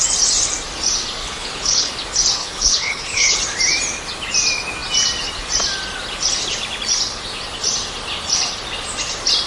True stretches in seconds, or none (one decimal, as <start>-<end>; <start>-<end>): 0.0-1.2; 1.9-2.4; 3.4-9.5